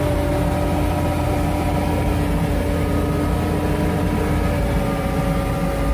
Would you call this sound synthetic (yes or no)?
no